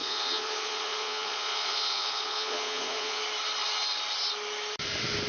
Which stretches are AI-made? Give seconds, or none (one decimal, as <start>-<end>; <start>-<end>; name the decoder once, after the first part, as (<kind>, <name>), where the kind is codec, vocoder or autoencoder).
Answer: 0.0-3.2 (vocoder, Vocos)